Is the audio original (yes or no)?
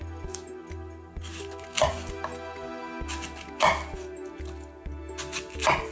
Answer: yes